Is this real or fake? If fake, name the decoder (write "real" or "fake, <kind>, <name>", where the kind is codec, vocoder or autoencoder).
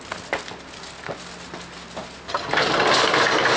real